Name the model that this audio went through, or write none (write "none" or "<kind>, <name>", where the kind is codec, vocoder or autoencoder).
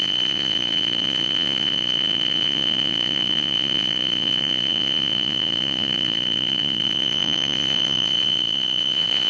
vocoder, Vocos